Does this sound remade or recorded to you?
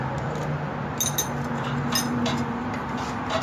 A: recorded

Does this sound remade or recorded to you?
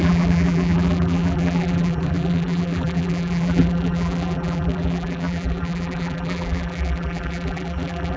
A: remade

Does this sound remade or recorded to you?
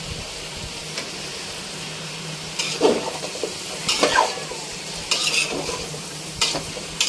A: remade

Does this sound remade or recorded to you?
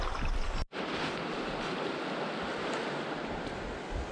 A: recorded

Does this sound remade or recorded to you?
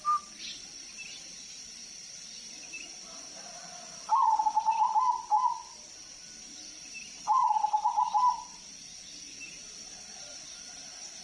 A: remade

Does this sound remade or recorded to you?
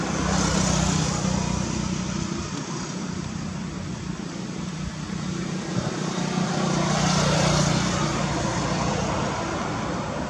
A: recorded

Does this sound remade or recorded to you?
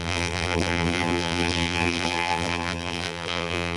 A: remade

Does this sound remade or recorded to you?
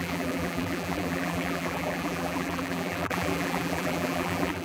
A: remade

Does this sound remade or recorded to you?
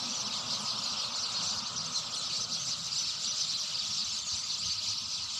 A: recorded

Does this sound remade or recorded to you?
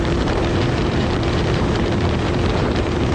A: remade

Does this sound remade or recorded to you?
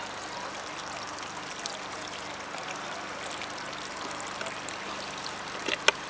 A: recorded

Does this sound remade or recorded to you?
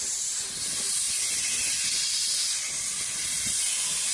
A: recorded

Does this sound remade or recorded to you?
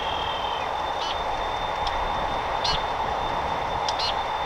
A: recorded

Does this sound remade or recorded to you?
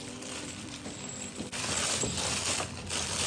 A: remade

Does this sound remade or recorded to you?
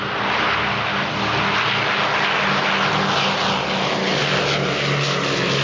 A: recorded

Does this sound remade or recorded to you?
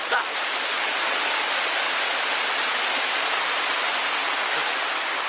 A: recorded